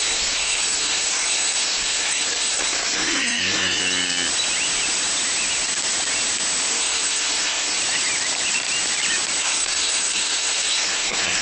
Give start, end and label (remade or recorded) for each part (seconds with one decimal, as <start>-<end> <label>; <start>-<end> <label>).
0.0-3.8 remade; 3.8-6.7 recorded; 6.7-7.8 remade; 7.8-9.4 recorded; 9.4-11.4 remade